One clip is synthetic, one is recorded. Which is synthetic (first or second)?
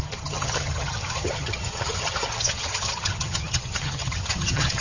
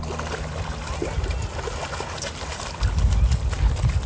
first